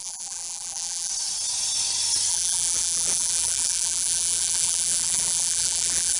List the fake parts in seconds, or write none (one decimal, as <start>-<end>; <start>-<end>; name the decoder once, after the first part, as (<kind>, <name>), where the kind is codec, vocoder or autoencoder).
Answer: 0.0-1.1 (vocoder, BigVGAN v2); 2.3-6.2